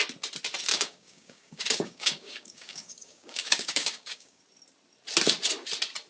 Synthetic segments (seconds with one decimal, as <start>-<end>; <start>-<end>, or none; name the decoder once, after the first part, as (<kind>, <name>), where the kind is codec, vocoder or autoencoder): 0.7-4.4 (codec, DAC)